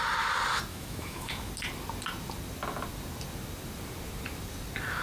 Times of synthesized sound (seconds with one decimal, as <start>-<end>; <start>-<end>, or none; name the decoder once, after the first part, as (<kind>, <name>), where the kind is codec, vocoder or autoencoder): 0.7-1.5 (autoencoder, DAC-VAE)